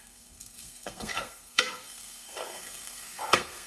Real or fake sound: fake